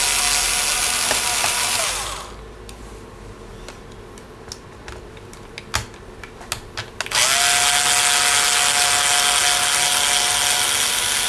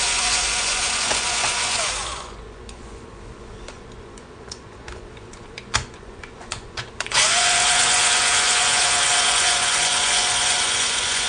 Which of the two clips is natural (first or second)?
first